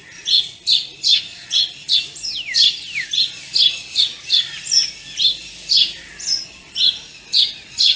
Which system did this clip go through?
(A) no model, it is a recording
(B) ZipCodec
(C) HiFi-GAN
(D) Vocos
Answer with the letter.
A